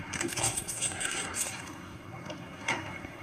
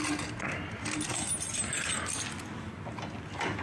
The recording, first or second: second